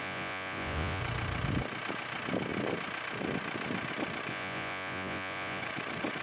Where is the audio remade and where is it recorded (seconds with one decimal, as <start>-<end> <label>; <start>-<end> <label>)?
0.0-1.0 remade; 1.0-4.3 recorded; 4.3-5.6 remade; 5.6-6.2 recorded